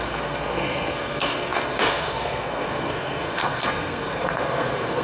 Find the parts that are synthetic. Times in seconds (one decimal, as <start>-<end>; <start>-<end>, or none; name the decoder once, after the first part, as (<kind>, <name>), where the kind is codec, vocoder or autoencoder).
0.0-5.0 (codec, SNAC)